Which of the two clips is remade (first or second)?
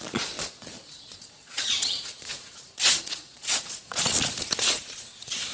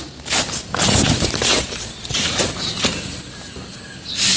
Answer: first